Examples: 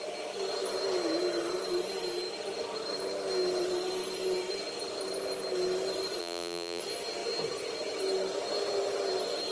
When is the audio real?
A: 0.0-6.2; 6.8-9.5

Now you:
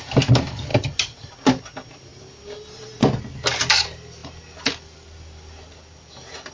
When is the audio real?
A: 0.0-6.5

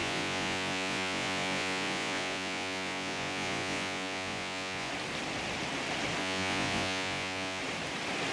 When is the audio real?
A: 4.9-6.2; 7.6-8.3